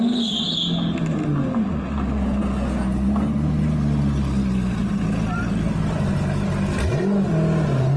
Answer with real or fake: real